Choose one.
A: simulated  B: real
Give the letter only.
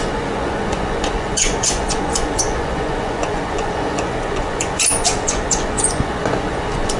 A